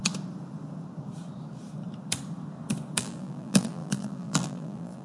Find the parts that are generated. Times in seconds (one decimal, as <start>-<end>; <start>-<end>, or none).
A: 3.0-5.0